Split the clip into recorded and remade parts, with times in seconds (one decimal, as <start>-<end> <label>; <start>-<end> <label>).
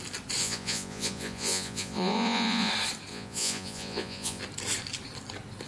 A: 0.0-0.4 recorded; 0.4-2.7 remade; 2.7-3.1 recorded; 3.1-4.4 remade; 4.4-5.7 recorded